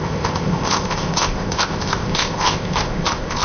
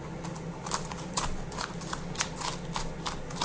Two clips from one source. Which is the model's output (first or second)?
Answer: first